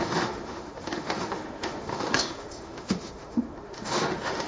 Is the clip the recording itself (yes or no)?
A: no